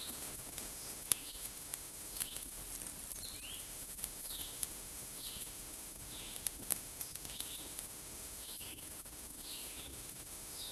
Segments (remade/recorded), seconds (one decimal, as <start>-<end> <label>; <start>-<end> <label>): 0.0-2.6 remade; 2.6-3.6 recorded; 3.6-10.7 remade